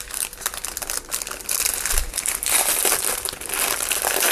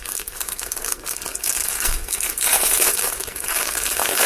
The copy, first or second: second